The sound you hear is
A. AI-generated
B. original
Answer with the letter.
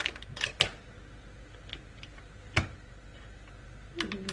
B